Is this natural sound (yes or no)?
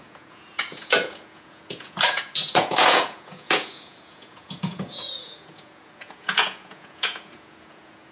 no